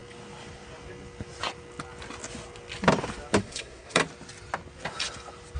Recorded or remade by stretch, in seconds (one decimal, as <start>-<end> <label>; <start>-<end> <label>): 0.0-3.4 recorded; 3.4-4.0 remade; 4.0-5.6 recorded